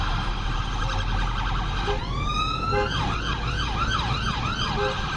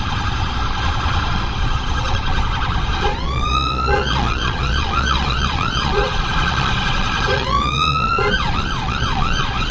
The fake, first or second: second